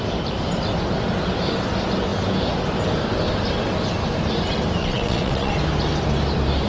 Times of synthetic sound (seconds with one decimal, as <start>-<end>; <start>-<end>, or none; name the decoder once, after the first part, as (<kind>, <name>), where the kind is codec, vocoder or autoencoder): 4.8-5.5 (vocoder, WaveNeXt)

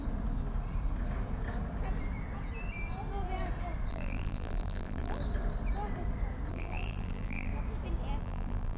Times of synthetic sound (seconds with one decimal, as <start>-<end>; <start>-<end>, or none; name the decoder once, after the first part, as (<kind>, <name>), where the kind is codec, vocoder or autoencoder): 3.9-5.2 (vocoder, BigVGAN v2); 6.5-7.5; 8.2-8.8

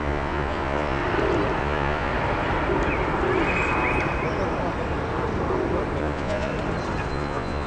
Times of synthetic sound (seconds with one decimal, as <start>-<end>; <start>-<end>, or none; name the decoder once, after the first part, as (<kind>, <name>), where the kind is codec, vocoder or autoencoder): 0.0-1.0 (vocoder, Vocos); 1.6-2.1; 6.0-6.5; 7.1-7.7

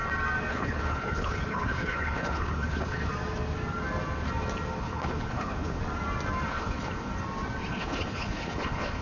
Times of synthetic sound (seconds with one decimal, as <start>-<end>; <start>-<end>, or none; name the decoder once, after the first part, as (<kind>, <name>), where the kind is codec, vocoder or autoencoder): 0.5-3.1 (codec, HILCodec); 4.8-5.8; 6.5-7.1; 7.7-9.0

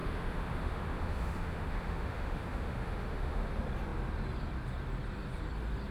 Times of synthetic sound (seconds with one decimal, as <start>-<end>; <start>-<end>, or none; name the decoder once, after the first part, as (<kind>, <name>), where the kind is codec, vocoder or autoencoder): 0.0-3.5 (autoencoder, DAC-VAE)

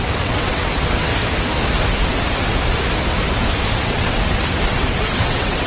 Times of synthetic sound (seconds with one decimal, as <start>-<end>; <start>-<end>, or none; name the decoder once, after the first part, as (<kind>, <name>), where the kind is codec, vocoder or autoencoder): 0.0-1.1 (vocoder, WaveNeXt); 3.8-5.7

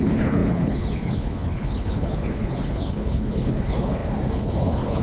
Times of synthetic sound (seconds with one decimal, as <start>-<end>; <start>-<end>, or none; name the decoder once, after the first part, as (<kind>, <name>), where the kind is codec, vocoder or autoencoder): 0.0-5.0 (codec, HILCodec)